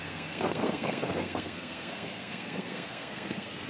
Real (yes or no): no